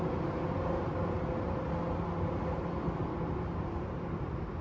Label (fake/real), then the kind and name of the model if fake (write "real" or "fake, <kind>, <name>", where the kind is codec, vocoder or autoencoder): real